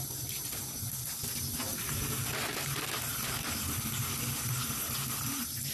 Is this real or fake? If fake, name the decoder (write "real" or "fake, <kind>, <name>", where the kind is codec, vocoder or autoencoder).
real